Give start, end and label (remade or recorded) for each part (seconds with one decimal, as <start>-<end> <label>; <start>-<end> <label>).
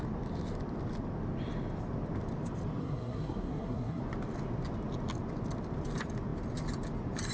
0.0-2.8 recorded; 2.8-4.0 remade; 4.0-7.3 recorded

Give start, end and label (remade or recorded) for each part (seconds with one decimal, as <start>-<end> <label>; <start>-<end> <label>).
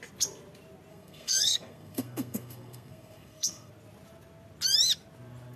0.0-0.9 recorded; 0.9-3.7 remade; 3.7-5.6 recorded